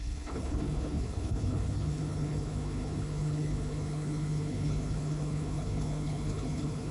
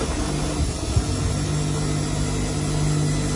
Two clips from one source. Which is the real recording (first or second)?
second